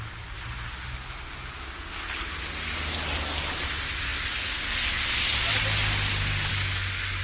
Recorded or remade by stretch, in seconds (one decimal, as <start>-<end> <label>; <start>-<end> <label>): 0.0-7.2 recorded